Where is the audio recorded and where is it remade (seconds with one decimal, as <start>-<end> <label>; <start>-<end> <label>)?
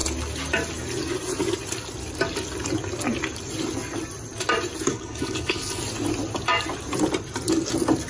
0.0-4.9 recorded; 4.9-5.8 remade; 5.8-8.1 recorded